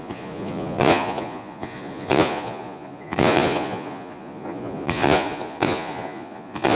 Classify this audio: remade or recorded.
remade